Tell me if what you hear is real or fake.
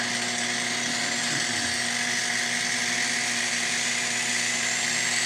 real